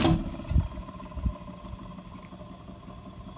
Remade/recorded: recorded